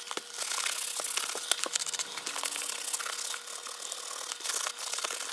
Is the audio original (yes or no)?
yes